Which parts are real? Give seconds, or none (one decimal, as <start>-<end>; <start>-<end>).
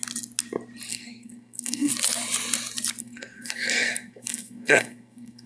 0.0-0.9; 1.9-3.0